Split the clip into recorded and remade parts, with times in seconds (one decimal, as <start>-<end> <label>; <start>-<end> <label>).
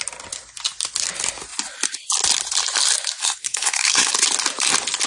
0.0-3.2 recorded; 3.2-4.1 remade; 4.1-5.1 recorded